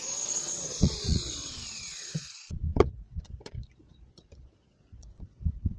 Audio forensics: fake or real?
fake